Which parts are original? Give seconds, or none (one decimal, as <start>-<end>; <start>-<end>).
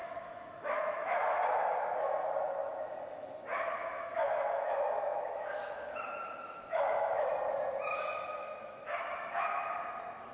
1.2-2.6; 7.3-8.4; 9.8-10.3